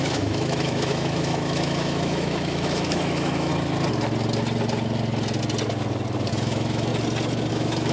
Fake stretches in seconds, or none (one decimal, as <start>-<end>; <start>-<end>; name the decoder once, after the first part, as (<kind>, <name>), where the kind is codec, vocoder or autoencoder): 0.0-3.5 (autoencoder, DAC-VAE); 6.3-6.9; 7.5-7.9